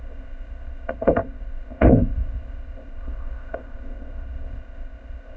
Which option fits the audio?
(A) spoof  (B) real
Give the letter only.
A